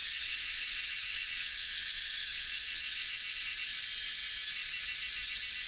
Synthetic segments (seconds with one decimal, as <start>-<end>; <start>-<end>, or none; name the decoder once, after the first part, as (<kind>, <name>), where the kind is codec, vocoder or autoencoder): 0.0-3.4 (vocoder, WaveNeXt)